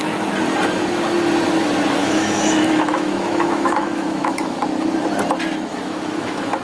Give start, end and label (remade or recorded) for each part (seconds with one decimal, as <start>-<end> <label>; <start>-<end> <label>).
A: 0.0-2.0 recorded; 2.0-4.6 remade; 4.6-5.7 recorded; 5.7-6.6 remade